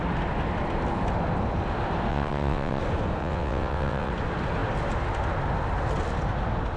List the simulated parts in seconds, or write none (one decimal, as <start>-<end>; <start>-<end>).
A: 2.1-2.8; 3.2-4.1